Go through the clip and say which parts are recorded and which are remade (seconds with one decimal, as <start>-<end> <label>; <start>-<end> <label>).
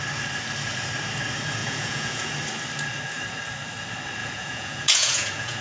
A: 0.0-1.6 recorded; 1.6-2.3 remade; 2.3-4.2 recorded; 4.2-5.6 remade